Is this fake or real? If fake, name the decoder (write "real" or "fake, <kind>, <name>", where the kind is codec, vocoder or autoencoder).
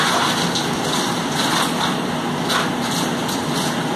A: real